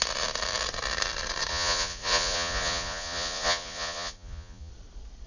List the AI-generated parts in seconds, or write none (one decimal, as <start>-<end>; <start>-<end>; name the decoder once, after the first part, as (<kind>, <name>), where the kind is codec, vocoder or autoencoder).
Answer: 1.5-4.7 (vocoder, Vocos)